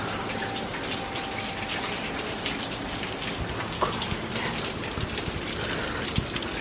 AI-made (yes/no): no